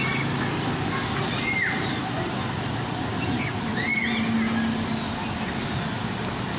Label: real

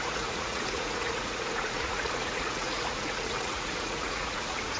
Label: fake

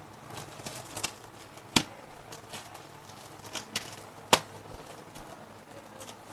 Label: real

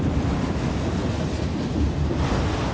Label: real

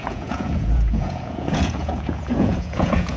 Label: fake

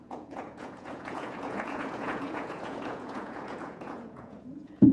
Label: fake